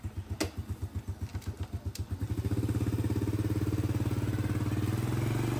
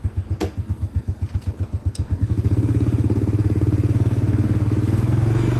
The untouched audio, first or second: first